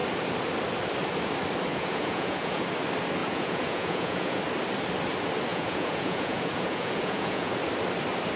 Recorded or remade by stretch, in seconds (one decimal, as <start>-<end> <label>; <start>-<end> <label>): 0.0-1.7 recorded; 1.7-2.6 remade; 2.6-3.2 recorded; 3.2-4.4 remade; 4.4-5.5 recorded; 5.5-7.5 remade; 7.5-8.4 recorded